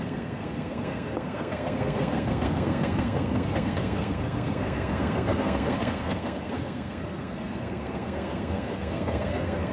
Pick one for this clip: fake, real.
fake